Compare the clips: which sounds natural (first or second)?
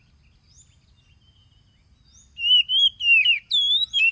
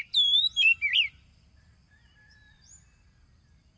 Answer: first